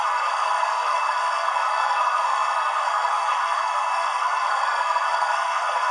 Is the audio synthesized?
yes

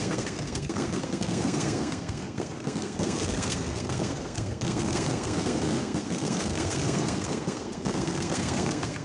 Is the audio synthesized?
yes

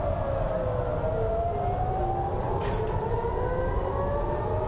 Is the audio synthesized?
no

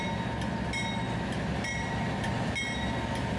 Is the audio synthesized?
no